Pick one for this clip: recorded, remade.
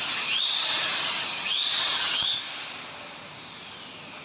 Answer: recorded